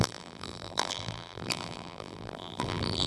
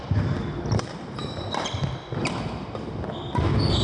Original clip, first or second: second